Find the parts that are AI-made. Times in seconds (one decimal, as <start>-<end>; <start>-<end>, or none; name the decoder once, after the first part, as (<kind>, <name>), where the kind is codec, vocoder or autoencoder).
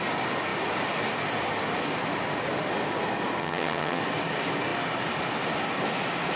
3.4-4.0 (vocoder, HiFi-GAN)